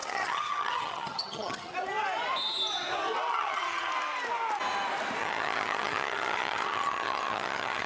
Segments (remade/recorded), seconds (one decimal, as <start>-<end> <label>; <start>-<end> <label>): 0.0-1.7 remade; 1.7-3.3 recorded; 3.3-3.9 remade; 3.9-5.2 recorded; 5.2-7.9 remade

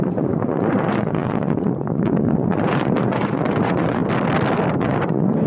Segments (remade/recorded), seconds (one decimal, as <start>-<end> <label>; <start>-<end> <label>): 0.0-4.0 remade; 4.0-4.8 recorded; 4.8-5.5 remade

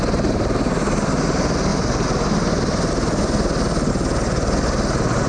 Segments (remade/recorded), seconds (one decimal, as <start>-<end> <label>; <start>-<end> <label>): 0.0-5.3 recorded

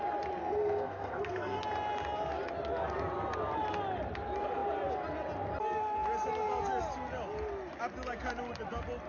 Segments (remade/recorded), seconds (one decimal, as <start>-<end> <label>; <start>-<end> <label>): 0.0-0.4 recorded; 0.4-1.6 remade; 1.6-9.1 recorded

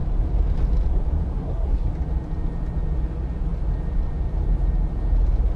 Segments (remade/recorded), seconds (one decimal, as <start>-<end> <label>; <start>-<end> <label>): 0.0-1.3 recorded; 1.3-1.9 remade; 1.9-5.6 recorded